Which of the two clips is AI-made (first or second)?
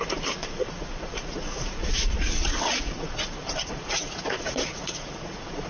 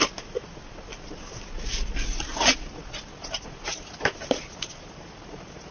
first